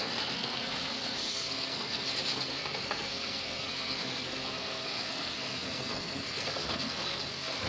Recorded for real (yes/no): no